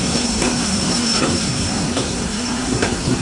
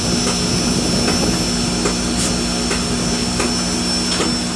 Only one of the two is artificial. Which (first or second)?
first